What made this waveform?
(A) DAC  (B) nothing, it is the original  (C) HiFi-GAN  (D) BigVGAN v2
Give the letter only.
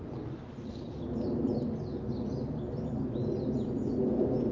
B